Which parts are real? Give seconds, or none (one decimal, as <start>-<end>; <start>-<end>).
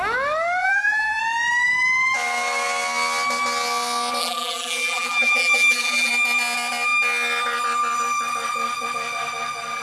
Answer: 0.0-0.6; 1.2-4.2; 6.1-9.8